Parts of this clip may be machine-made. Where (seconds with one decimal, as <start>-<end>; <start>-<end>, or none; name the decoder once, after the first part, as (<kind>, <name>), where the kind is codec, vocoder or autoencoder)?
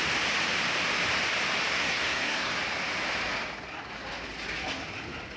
1.7-2.5 (codec, SNAC)